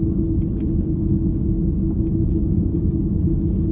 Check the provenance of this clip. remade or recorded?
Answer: recorded